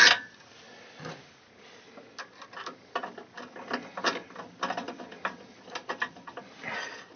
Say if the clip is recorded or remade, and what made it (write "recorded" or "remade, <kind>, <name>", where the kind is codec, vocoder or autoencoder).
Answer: recorded